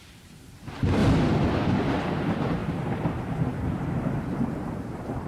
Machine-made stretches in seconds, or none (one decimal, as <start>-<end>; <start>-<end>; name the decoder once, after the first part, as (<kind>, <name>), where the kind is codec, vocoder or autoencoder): 0.0-1.0 (vocoder, BigVGAN v2); 1.9-5.3